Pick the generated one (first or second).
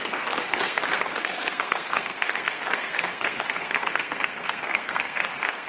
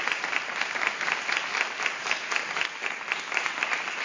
first